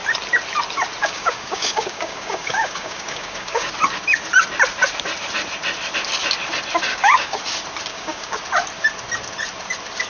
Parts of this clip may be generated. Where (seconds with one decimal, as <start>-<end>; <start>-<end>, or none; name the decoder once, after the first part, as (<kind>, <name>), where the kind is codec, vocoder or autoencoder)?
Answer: 1.0-3.7 (codec, DAC); 6.9-7.4; 7.9-8.4